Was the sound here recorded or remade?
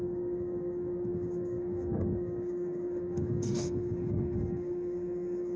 remade